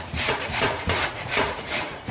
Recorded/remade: remade